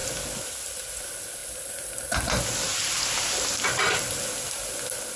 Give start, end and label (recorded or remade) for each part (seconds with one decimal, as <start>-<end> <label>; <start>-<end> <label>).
0.0-5.2 recorded